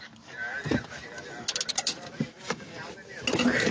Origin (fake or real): real